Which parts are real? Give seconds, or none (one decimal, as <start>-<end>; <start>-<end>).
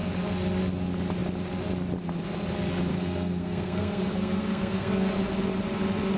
0.0-2.9; 4.9-6.2